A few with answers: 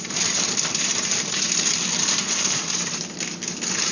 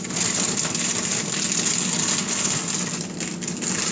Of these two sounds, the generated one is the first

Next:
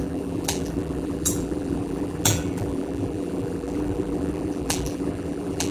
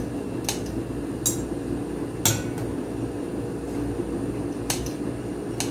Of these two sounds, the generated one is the first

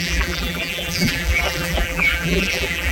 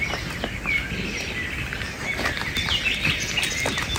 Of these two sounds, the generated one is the first